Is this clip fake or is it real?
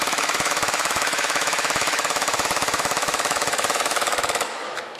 fake